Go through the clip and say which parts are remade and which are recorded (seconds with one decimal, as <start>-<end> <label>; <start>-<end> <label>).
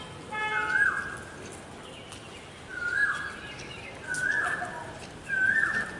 0.0-6.0 recorded